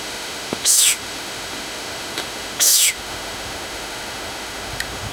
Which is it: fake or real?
fake